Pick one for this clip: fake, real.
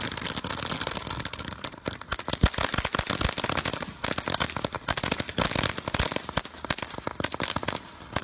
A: real